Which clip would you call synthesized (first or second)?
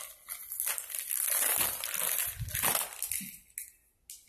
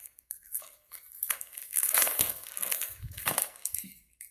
second